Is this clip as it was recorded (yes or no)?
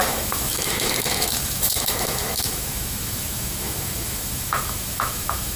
no